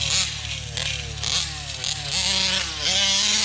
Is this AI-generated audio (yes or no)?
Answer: no